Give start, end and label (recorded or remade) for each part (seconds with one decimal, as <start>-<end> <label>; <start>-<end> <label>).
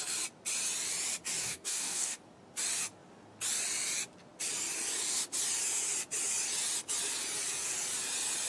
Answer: 0.0-1.4 recorded; 1.4-2.2 remade; 2.2-8.5 recorded